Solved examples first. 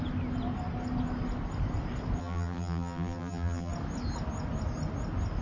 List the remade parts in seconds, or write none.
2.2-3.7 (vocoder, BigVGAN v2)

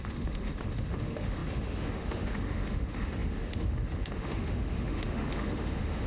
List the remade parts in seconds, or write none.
0.0-6.1 (autoencoder, DAC-VAE)